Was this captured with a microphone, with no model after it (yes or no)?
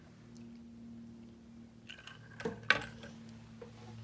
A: yes